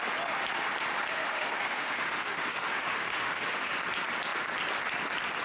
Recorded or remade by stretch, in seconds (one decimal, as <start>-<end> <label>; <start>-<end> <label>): 0.0-1.1 recorded; 1.1-3.7 remade; 3.7-5.4 recorded